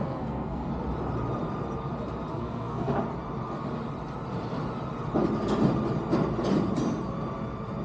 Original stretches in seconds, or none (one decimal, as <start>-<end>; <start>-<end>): 0.7-2.3; 3.0-7.8